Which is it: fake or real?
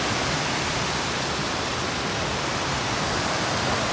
real